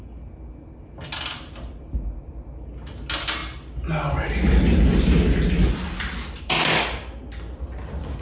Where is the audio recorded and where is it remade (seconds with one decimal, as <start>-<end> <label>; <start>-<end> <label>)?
0.0-8.2 recorded